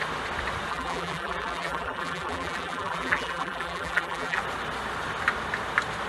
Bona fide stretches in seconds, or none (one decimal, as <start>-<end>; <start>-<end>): 0.0-0.7; 4.4-6.1